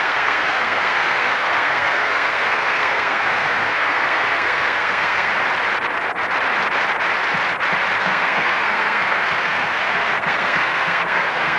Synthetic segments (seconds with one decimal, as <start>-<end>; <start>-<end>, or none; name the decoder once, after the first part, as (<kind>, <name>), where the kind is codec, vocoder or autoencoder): 0.0-5.3 (codec, SNAC); 8.0-11.6